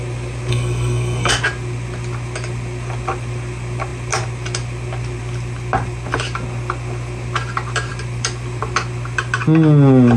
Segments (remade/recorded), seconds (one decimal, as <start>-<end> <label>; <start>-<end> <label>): 0.0-0.5 recorded; 0.5-1.3 remade; 1.3-10.2 recorded